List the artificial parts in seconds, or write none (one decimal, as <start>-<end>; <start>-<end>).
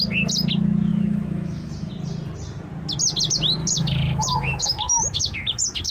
0.9-1.9; 3.6-5.9